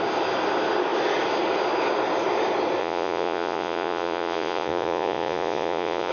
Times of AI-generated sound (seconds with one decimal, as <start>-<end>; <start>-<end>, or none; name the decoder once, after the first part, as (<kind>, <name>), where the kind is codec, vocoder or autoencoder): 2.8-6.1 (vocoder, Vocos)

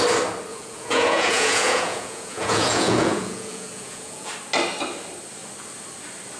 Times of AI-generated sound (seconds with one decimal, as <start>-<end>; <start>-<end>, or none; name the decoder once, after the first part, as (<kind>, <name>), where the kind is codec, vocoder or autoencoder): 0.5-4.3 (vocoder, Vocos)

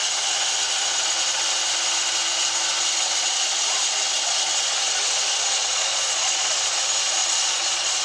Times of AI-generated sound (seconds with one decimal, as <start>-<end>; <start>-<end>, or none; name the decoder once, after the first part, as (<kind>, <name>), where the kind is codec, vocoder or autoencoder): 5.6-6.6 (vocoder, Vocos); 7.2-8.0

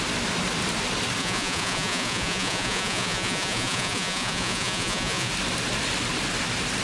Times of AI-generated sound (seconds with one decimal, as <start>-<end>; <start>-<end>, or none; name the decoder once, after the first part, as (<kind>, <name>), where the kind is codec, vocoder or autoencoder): 1.2-5.3 (vocoder, Vocos)

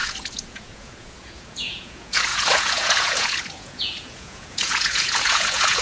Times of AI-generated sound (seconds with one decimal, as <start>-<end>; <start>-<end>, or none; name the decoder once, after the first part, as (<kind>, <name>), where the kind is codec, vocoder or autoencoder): 0.0-5.8 (vocoder, Vocos)

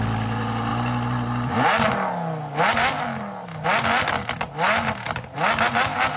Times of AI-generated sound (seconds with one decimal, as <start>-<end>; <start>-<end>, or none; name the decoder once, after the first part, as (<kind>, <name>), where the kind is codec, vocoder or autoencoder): none

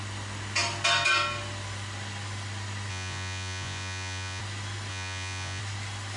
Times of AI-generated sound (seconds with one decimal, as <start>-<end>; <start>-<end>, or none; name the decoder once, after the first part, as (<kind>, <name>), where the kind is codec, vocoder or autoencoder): 2.9-4.4 (vocoder, Vocos); 4.9-5.6